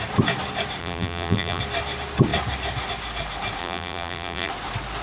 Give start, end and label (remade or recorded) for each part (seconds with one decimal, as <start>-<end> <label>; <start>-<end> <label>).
0.0-0.8 recorded; 0.8-1.6 remade; 1.6-3.6 recorded; 3.6-4.5 remade; 4.5-5.0 recorded